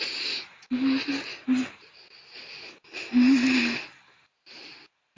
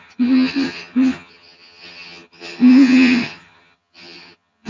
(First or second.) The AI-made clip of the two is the second